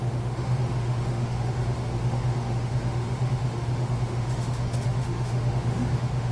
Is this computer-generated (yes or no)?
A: yes